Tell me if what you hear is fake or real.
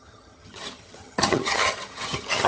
fake